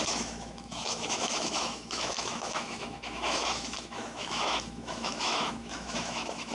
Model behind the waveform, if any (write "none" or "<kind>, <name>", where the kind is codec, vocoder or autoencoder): autoencoder, DAC-VAE